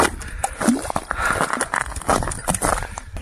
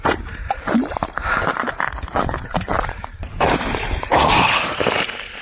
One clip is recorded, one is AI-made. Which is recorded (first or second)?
first